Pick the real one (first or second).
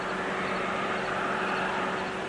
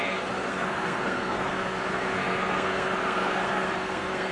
first